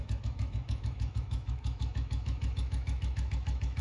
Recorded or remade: remade